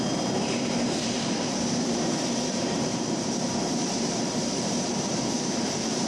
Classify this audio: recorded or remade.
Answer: remade